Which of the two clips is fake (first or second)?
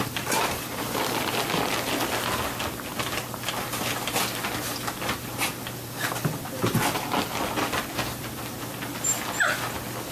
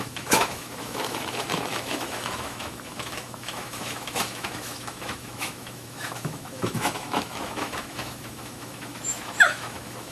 second